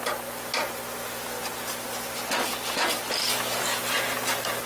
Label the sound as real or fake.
real